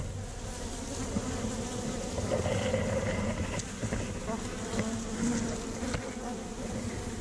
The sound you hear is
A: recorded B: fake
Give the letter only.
A